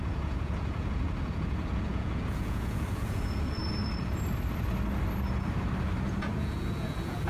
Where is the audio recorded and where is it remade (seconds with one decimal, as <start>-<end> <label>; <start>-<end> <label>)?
0.0-3.6 remade; 3.6-6.1 recorded; 6.1-7.3 remade